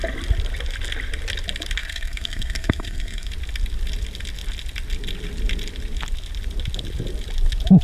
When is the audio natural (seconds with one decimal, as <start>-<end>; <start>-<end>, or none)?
0.0-1.8; 3.3-7.8